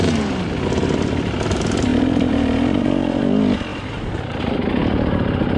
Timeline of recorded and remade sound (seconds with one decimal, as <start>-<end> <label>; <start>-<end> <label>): 0.0-1.9 recorded; 1.9-3.2 remade; 3.2-3.7 recorded; 3.7-4.4 remade; 4.4-5.6 recorded